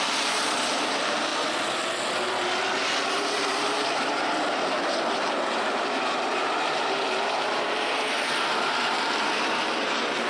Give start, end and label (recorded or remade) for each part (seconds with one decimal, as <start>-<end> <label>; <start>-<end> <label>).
0.0-1.3 remade; 1.3-3.1 recorded; 3.1-10.3 remade